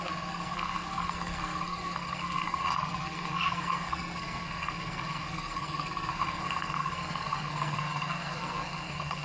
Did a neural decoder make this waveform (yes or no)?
yes